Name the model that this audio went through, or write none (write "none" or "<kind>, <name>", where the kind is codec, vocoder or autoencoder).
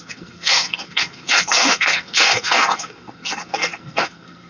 codec, SNAC